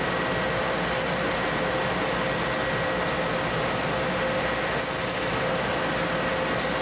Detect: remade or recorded recorded